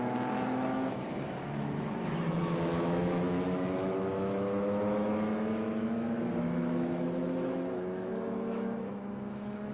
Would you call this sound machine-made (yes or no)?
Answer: yes